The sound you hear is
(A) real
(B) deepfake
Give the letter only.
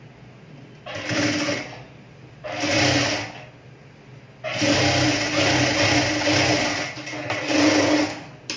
A